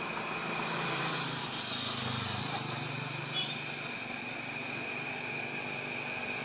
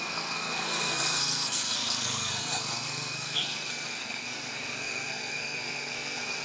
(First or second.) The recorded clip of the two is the first